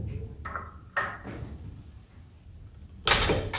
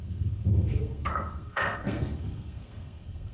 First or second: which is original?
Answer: first